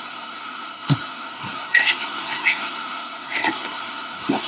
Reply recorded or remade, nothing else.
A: remade